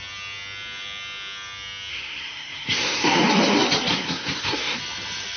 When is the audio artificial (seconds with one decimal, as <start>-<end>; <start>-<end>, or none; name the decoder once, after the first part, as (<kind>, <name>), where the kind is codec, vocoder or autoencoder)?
1.9-3.2 (codec, SNAC); 3.9-4.8